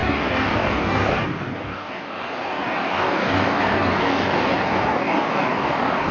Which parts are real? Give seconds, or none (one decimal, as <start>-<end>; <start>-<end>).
none